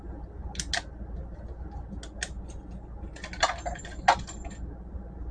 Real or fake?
real